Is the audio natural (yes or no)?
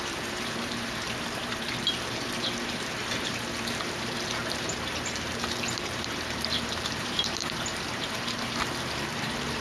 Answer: no